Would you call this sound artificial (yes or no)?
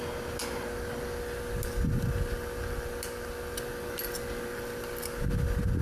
no